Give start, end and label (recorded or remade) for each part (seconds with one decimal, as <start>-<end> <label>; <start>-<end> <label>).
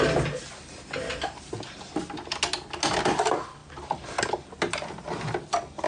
0.0-3.6 recorded; 3.6-4.5 remade; 4.5-5.9 recorded